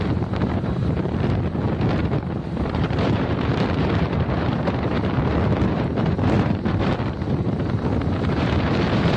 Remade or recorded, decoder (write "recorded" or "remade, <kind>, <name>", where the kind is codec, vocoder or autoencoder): remade, vocoder, BigVGAN v2